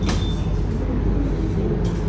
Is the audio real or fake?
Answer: real